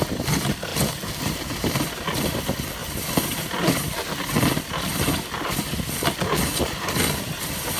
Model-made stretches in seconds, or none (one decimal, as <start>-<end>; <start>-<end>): none